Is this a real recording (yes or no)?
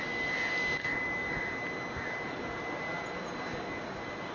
yes